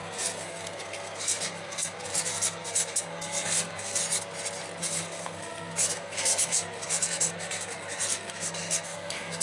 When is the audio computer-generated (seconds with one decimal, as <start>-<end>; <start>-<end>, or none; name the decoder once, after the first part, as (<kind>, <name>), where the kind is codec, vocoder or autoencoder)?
0.0-4.0 (codec, SNAC); 4.8-9.4